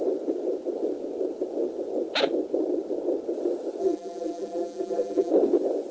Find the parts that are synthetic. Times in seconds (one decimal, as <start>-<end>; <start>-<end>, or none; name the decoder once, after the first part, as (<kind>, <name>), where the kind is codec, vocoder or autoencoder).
3.8-5.3 (vocoder, BigVGAN v2)